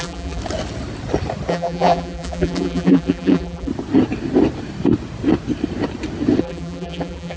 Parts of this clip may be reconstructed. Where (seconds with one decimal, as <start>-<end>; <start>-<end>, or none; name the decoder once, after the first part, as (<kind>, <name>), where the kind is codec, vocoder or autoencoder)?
0.0-0.4 (vocoder, BigVGAN v2); 1.5-3.7; 6.4-7.4